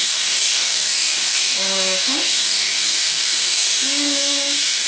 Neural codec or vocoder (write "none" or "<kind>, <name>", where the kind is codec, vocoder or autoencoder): codec, DAC